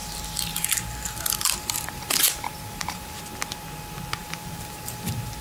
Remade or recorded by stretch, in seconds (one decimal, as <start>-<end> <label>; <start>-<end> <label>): 0.0-3.2 remade; 3.2-4.2 recorded; 4.2-5.4 remade